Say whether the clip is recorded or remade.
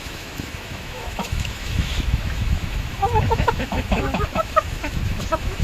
remade